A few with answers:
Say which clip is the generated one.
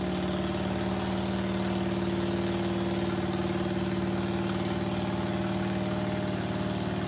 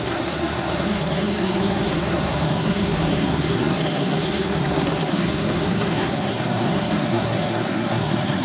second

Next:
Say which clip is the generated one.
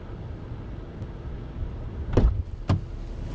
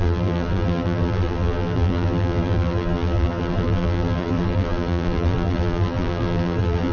second